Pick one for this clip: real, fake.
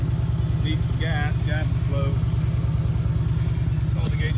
real